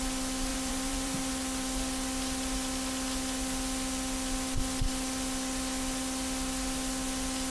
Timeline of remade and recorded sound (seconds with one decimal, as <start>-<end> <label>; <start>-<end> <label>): 0.0-0.5 recorded; 0.5-1.3 remade; 1.3-7.5 recorded